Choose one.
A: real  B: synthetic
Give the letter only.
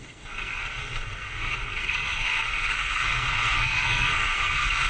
B